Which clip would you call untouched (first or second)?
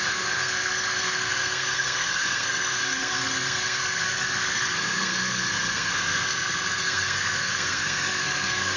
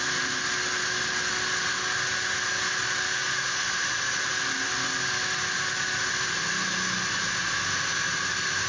second